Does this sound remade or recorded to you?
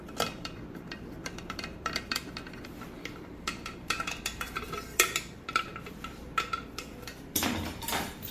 remade